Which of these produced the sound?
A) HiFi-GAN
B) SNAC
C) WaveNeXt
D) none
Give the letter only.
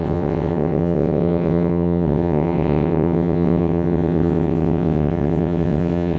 C